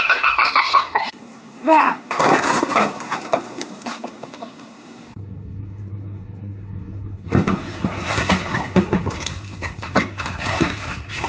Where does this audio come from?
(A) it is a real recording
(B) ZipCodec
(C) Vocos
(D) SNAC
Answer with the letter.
D